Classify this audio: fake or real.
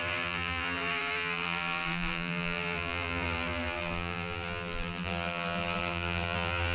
fake